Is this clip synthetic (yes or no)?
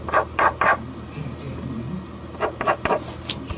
no